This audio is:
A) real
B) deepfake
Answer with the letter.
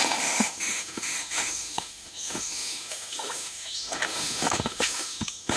B